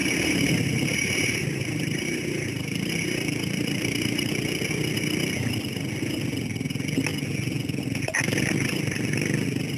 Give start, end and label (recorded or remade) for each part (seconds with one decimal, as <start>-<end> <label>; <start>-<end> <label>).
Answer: 0.0-4.3 remade; 4.3-9.8 recorded